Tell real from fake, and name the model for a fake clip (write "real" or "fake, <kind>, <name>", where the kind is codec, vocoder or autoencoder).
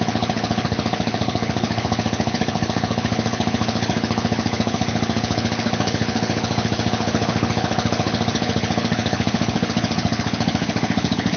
fake, codec, HILCodec